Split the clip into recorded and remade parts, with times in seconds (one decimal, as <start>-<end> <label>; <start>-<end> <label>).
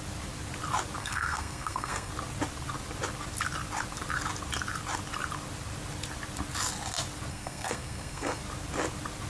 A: 0.0-1.0 recorded; 1.0-2.1 remade; 2.1-7.3 recorded; 7.3-8.4 remade; 8.4-9.3 recorded